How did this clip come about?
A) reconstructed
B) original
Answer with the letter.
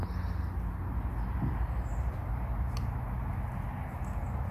B